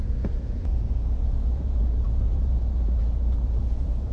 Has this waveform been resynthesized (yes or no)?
yes